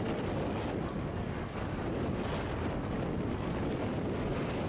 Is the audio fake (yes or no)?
no